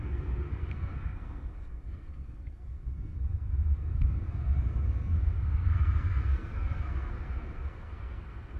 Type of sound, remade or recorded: remade